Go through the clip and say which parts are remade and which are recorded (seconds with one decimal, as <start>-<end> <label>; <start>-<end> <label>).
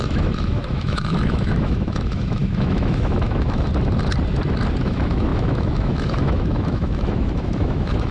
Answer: 0.0-3.7 remade; 3.7-4.8 recorded; 4.8-8.1 remade